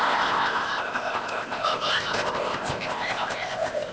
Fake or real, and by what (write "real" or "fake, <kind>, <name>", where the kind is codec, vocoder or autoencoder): fake, codec, ZipCodec